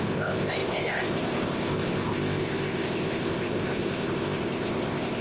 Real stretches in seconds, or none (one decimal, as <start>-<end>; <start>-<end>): none